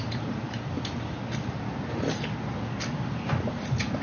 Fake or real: real